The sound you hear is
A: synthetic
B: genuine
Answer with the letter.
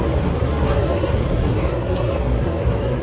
A